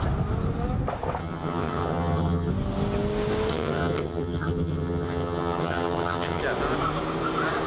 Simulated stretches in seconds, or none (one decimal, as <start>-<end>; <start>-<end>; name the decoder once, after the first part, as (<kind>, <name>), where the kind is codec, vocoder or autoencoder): 1.2-2.5 (vocoder, HiFi-GAN); 3.5-6.4